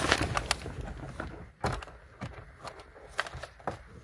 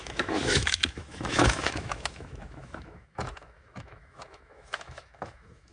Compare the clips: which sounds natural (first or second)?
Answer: first